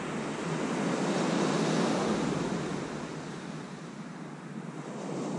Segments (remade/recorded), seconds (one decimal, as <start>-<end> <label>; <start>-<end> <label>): 0.0-5.4 recorded

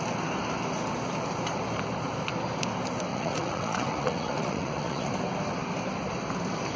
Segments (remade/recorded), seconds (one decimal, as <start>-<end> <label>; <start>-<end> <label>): 0.0-3.1 recorded; 3.1-5.1 remade; 5.1-6.8 recorded